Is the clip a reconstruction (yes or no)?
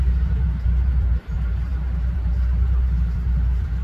no